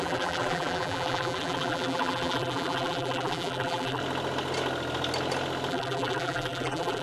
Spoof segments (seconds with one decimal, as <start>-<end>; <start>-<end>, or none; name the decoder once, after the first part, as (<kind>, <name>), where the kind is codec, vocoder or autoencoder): 0.0-4.0 (vocoder, BigVGAN v2); 5.7-7.0

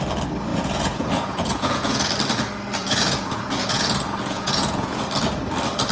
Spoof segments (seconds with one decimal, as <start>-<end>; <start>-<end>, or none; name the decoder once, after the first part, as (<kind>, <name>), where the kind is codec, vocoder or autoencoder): 0.5-2.1 (vocoder, Vocos); 2.8-5.0